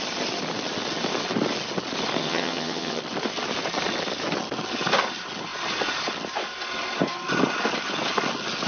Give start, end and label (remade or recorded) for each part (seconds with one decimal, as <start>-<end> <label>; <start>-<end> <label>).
0.0-2.2 recorded; 2.2-3.0 remade; 3.0-8.7 recorded